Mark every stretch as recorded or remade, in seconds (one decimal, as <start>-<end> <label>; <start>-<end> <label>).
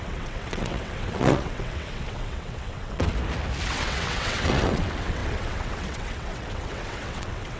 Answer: 0.0-3.1 remade; 3.1-3.7 recorded; 3.7-7.6 remade